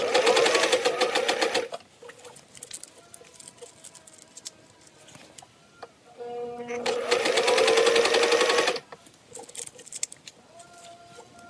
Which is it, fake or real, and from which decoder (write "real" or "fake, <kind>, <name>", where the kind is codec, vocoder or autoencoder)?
real